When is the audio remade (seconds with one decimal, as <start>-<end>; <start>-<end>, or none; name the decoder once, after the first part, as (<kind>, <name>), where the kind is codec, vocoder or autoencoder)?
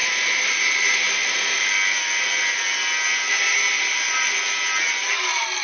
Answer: 0.0-1.6 (vocoder, BigVGAN v2); 3.3-4.4